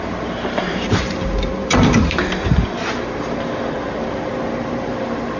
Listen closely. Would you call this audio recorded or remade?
remade